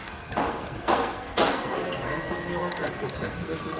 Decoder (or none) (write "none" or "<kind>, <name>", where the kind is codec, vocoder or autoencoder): codec, SNAC